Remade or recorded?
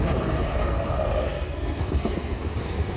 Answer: remade